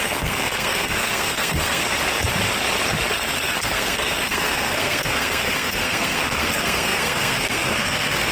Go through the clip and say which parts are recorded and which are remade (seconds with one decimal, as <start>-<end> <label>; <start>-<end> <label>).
0.0-1.8 remade; 1.8-3.1 recorded; 3.1-8.3 remade